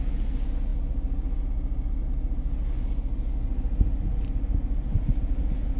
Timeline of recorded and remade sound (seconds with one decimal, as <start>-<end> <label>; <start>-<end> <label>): 0.0-5.8 recorded